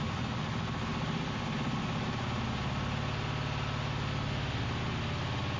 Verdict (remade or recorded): recorded